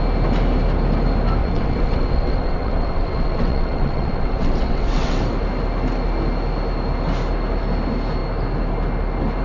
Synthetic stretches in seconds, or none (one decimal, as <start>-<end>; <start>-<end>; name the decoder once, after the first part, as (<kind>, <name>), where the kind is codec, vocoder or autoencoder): 1.4-5.2 (vocoder, WaveNeXt)

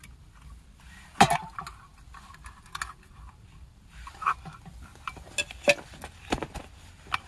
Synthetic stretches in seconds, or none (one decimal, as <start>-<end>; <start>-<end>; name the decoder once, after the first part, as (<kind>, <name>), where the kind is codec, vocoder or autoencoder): none

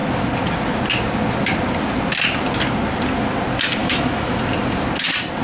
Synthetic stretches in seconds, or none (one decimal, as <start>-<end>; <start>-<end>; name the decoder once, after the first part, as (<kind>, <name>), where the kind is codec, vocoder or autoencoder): 3.8-4.4 (autoencoder, DAC-VAE)

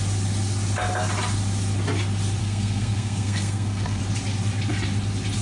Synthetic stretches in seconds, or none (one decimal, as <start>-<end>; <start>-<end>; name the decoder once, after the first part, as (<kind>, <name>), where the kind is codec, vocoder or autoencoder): 2.4-4.0 (codec, SNAC)

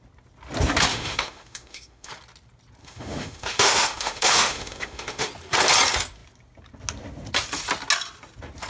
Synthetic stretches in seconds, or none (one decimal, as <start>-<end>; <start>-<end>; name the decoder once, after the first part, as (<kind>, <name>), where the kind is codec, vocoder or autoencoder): 0.9-2.1 (autoencoder, DAC-VAE); 2.8-5.3

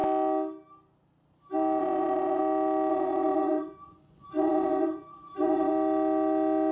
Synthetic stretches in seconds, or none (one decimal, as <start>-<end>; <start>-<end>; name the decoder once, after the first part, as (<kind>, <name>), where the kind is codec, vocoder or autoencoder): 1.8-2.4 (vocoder, Vocos); 2.9-5.7